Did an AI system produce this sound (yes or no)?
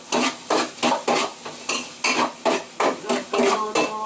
no